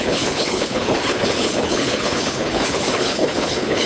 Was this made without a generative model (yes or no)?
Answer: no